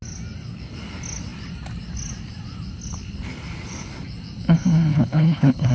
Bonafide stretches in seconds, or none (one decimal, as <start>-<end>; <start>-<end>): 0.0-4.9